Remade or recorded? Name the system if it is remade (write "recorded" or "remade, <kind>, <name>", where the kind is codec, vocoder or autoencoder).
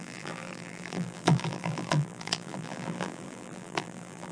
remade, vocoder, BigVGAN v2